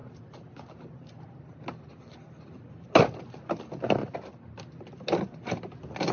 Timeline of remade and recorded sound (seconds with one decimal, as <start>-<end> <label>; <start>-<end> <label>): 0.0-6.1 recorded